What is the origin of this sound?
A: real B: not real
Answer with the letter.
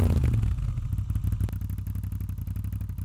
A